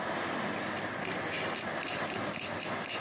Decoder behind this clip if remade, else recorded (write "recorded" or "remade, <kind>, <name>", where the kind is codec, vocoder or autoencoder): recorded